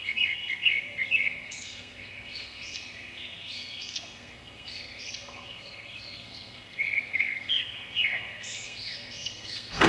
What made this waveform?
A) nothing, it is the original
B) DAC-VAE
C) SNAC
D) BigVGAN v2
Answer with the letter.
C